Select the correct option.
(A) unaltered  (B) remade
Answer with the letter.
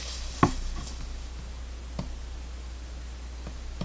A